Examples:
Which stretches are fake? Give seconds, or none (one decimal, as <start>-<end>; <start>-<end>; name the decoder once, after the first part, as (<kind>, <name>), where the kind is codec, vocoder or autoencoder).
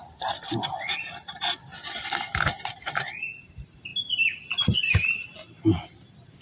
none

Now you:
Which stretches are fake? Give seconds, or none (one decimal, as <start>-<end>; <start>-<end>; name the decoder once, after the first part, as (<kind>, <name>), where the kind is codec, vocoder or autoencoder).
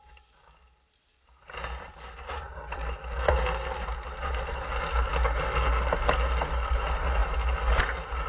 none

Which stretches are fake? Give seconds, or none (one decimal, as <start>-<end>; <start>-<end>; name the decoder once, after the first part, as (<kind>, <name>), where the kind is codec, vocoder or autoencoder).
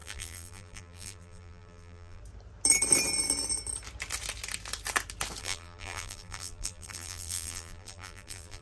0.0-2.2 (vocoder, BigVGAN v2); 5.4-8.6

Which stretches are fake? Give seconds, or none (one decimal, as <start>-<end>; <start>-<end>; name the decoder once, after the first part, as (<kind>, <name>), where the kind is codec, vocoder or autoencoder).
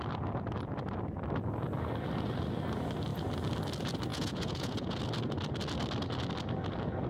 4.1-5.0 (vocoder, Vocos)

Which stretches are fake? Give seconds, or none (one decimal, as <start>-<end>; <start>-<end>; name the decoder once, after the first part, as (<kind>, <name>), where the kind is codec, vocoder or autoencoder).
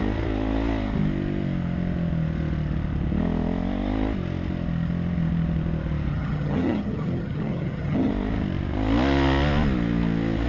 6.1-8.1 (vocoder, HiFi-GAN)